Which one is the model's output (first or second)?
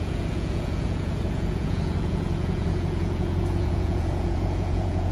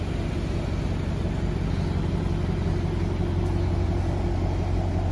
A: first